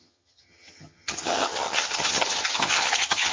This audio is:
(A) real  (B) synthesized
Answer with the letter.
B